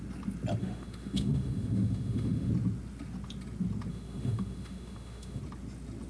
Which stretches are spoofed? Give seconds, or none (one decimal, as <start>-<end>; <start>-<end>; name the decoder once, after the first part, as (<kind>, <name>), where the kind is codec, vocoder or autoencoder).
0.6-2.5 (autoencoder, DAC-VAE); 3.9-5.4